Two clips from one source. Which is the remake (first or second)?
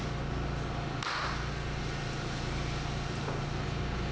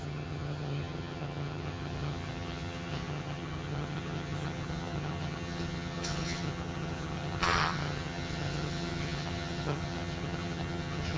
second